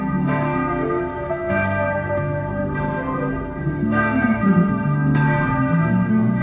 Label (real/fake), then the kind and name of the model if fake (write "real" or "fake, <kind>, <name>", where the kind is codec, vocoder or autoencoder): fake, codec, SNAC